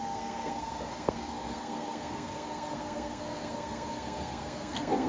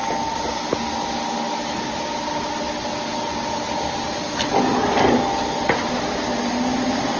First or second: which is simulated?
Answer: first